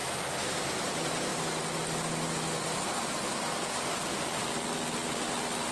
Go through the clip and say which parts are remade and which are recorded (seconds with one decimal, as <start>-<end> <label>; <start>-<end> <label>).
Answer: 0.0-5.7 recorded